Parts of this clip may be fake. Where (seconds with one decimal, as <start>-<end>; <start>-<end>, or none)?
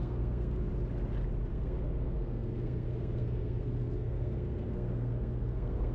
0.0-0.7; 1.5-5.9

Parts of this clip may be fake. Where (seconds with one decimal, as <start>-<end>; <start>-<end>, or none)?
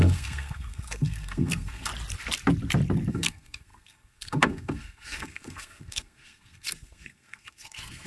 0.0-1.9; 3.1-8.1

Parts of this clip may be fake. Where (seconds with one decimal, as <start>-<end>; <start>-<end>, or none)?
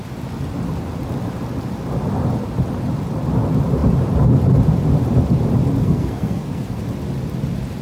5.8-6.8